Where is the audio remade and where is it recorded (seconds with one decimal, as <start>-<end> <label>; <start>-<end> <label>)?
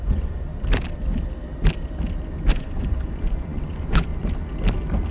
0.0-0.5 remade; 0.5-2.5 recorded; 2.5-4.1 remade; 4.1-5.1 recorded